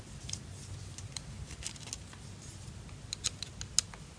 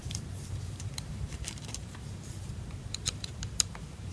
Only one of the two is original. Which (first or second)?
first